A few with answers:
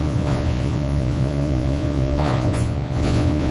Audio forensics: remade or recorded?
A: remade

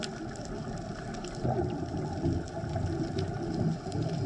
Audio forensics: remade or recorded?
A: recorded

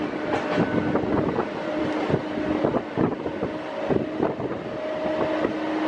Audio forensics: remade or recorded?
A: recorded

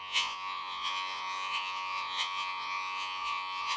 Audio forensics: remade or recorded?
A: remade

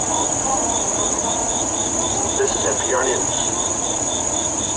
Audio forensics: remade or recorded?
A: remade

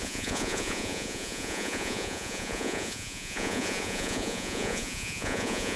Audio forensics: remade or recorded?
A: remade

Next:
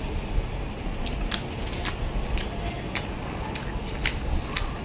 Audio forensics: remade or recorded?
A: recorded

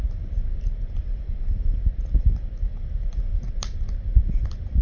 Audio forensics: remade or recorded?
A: recorded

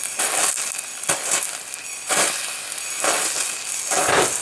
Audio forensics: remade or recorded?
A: recorded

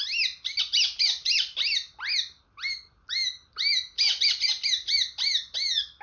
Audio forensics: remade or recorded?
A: recorded